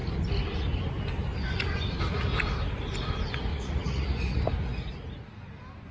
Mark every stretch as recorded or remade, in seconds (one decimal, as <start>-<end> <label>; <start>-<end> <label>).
0.0-3.5 recorded; 3.5-4.4 remade; 4.4-5.9 recorded